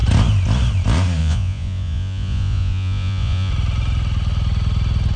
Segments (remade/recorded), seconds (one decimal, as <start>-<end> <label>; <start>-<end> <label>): 0.0-1.2 recorded; 1.2-3.5 remade; 3.5-5.2 recorded